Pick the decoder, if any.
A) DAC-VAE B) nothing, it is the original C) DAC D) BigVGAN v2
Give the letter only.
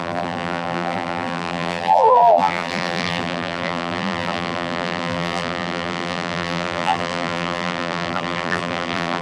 D